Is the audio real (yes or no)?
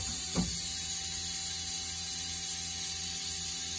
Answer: yes